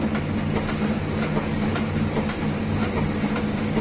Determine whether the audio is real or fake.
real